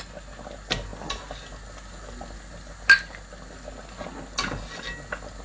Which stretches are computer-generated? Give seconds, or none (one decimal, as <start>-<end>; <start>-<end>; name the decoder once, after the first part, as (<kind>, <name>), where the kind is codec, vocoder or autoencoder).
none

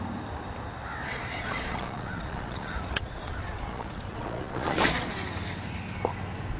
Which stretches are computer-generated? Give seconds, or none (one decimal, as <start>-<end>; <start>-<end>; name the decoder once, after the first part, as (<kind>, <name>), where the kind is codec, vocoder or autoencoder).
1.1-5.1 (vocoder, Vocos)